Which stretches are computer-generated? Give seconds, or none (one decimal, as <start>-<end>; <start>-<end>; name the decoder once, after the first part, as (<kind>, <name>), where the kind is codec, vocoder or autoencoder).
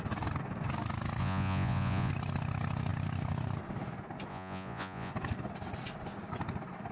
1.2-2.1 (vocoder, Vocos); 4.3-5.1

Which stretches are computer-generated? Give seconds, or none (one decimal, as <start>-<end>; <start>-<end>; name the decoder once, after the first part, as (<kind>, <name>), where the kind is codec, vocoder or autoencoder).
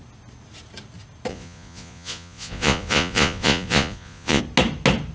1.3-4.4 (vocoder, Vocos)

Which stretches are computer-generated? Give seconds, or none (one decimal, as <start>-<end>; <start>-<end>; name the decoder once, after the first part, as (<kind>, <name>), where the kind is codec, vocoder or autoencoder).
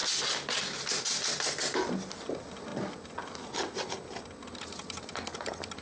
none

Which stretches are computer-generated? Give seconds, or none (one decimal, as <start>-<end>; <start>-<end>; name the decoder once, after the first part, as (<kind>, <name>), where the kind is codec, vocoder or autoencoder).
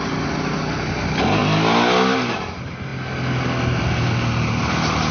none